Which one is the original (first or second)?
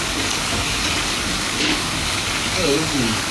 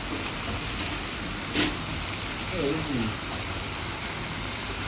second